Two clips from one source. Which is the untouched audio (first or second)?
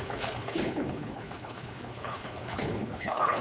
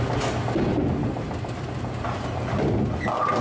second